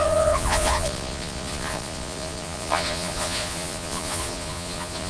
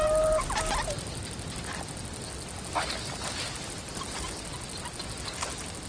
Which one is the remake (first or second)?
first